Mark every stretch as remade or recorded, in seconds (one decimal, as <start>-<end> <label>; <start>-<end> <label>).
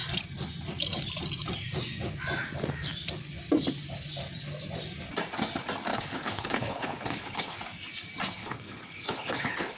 0.0-5.9 recorded; 5.9-7.6 remade; 7.6-8.4 recorded; 8.4-9.8 remade